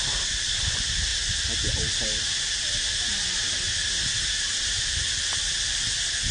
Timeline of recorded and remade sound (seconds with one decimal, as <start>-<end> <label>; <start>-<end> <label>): 0.0-6.3 recorded